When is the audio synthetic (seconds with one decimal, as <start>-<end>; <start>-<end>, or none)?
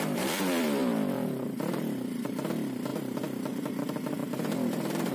0.0-5.1